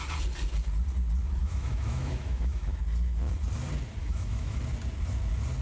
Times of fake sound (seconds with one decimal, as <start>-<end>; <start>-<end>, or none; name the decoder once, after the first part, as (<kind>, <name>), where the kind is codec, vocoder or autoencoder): 1.4-2.8 (autoencoder, DAC-VAE); 4.0-4.6